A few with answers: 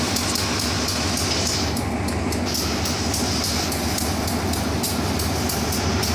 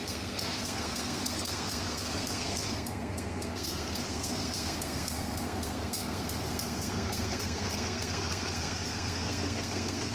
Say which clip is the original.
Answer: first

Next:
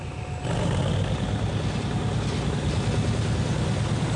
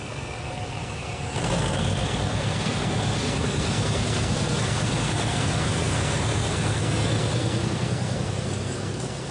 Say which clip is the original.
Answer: first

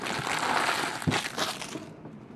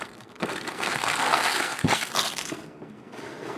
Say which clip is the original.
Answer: first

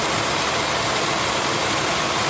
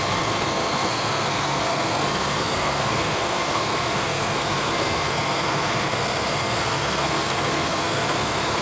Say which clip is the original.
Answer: first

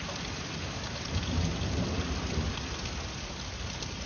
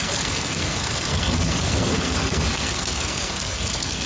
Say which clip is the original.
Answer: first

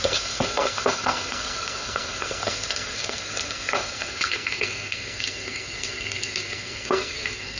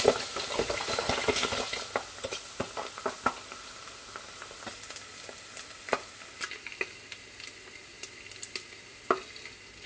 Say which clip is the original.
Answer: second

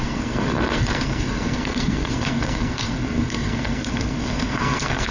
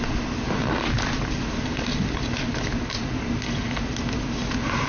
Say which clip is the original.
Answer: second